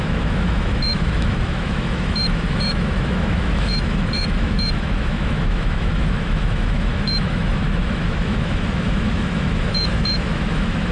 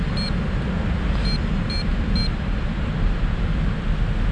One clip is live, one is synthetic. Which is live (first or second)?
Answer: second